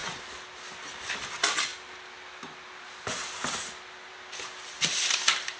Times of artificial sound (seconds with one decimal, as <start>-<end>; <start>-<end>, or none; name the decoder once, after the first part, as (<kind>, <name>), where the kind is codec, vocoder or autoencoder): none